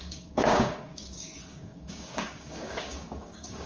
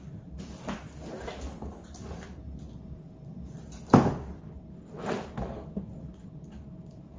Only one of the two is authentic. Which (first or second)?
second